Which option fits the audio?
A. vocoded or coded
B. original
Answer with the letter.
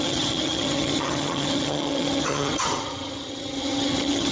A